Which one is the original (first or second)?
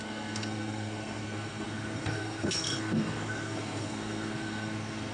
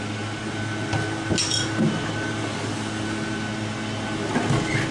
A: second